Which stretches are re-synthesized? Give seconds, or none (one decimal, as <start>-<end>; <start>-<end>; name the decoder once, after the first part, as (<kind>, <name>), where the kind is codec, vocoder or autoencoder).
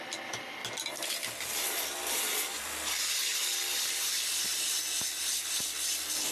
0.0-0.6 (vocoder, BigVGAN v2); 1.4-6.3